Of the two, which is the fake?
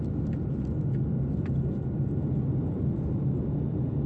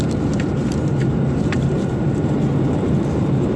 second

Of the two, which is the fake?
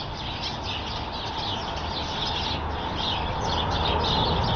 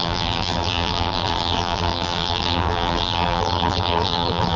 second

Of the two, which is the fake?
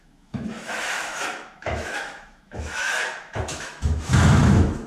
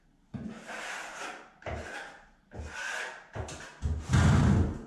first